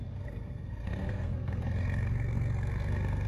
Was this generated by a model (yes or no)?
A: yes